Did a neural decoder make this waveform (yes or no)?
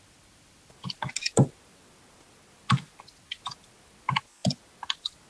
no